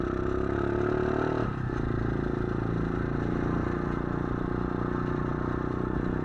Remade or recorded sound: recorded